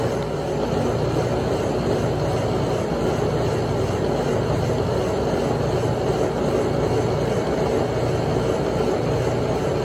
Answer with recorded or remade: recorded